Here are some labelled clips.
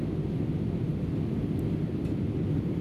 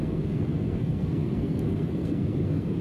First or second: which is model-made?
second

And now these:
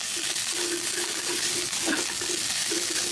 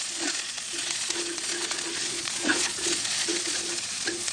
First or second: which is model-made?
second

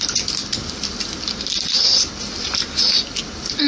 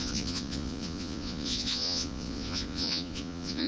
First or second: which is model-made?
second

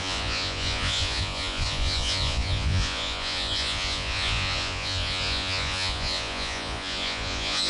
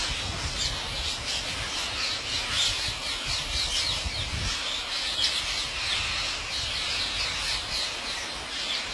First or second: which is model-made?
first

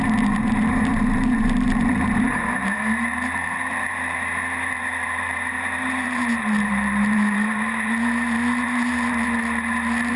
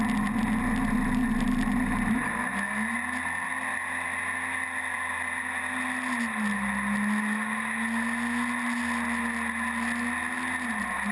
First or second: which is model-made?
first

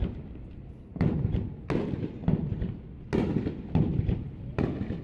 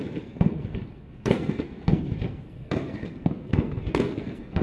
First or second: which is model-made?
second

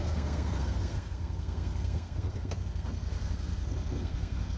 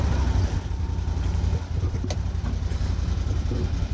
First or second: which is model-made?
first